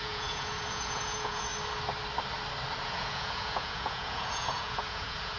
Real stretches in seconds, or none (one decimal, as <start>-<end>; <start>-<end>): 1.5-2.8